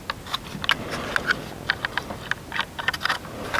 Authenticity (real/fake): real